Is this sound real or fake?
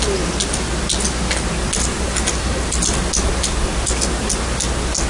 real